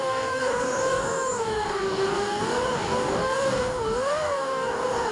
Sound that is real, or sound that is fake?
fake